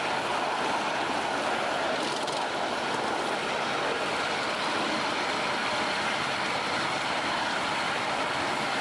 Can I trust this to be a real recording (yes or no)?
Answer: yes